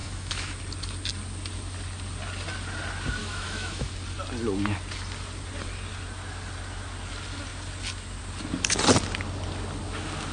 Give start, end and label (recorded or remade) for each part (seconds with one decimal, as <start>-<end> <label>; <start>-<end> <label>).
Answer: 0.0-0.6 remade; 0.6-3.2 recorded; 3.2-3.9 remade; 3.9-10.3 recorded